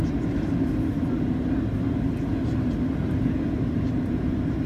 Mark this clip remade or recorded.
recorded